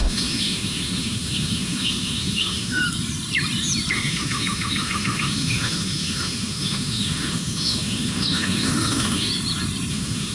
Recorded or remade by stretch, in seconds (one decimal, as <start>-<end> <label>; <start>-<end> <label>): 0.0-2.8 remade; 2.8-3.9 recorded; 3.9-9.3 remade; 9.3-9.9 recorded; 9.9-10.3 remade